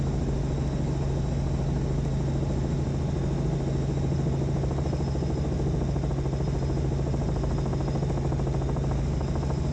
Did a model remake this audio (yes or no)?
no